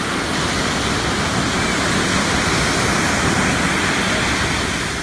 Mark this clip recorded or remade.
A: recorded